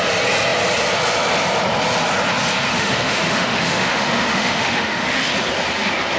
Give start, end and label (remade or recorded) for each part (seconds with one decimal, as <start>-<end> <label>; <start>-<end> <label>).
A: 0.0-2.7 recorded; 2.7-5.3 remade; 5.3-6.2 recorded